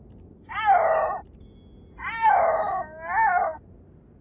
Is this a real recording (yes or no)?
yes